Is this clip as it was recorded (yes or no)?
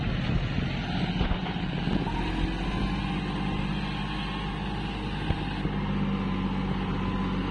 yes